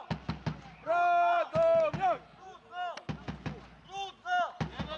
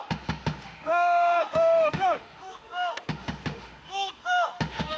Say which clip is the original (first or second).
first